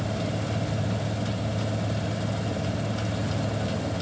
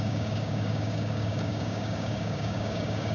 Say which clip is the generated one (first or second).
second